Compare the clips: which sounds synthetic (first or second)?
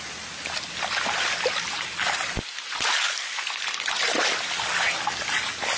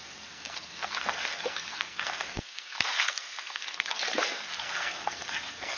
second